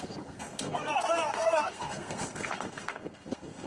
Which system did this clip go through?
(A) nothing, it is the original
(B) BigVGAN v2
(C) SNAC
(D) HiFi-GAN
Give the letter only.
C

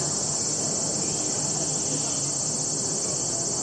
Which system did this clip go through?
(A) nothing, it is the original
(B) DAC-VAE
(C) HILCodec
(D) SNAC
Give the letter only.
A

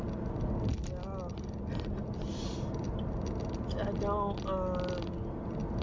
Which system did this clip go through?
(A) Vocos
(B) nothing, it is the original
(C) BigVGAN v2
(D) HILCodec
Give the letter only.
B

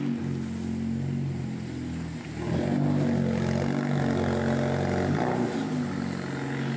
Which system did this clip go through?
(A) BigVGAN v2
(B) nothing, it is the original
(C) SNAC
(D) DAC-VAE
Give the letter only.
B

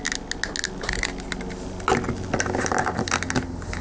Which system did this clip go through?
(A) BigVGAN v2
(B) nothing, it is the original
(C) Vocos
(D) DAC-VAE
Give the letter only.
B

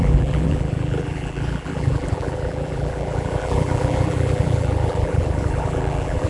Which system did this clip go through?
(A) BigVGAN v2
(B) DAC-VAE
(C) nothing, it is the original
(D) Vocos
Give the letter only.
A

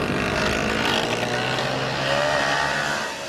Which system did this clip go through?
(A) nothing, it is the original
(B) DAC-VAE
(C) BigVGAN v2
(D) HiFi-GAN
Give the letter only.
A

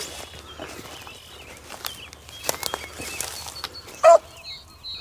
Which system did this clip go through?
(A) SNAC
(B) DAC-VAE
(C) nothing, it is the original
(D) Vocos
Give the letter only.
C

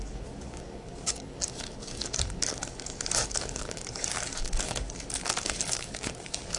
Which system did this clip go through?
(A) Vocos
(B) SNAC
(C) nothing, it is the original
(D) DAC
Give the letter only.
D